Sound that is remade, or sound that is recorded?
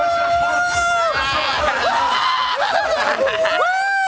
recorded